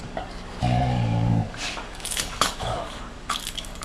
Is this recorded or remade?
remade